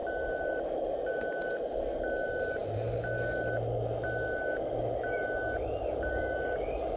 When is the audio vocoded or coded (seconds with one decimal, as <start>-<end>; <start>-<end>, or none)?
none